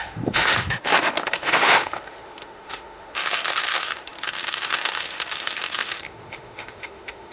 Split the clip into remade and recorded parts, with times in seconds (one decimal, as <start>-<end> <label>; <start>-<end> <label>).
0.0-7.3 remade